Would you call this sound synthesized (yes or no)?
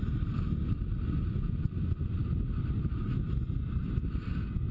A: no